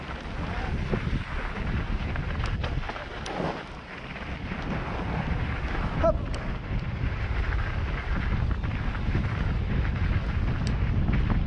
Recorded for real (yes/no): yes